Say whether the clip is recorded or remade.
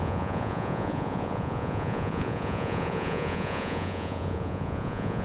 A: remade